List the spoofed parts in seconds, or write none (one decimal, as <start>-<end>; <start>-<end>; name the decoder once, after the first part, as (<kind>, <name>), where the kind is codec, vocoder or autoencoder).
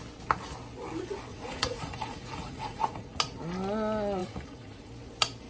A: 1.3-3.2 (vocoder, Vocos); 4.2-4.9